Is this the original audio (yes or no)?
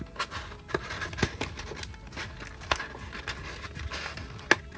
yes